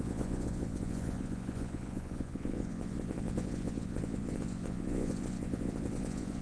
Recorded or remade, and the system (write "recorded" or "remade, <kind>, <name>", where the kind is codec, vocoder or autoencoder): remade, vocoder, Vocos